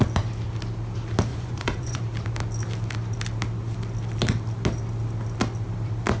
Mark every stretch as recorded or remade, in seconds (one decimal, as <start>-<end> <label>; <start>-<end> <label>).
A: 0.0-1.3 recorded; 1.3-2.0 remade; 2.0-6.2 recorded